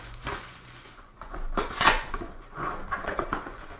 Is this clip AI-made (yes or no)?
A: yes